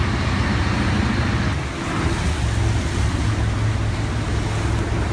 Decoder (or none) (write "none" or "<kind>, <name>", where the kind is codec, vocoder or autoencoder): none